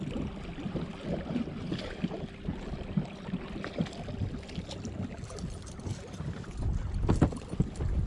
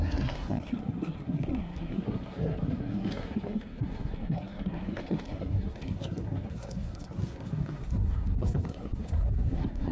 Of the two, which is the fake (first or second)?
second